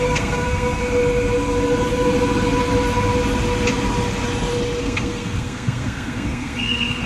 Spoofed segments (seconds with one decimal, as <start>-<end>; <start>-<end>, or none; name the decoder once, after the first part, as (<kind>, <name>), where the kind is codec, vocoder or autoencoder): 0.0-0.8 (codec, SNAC); 4.8-7.1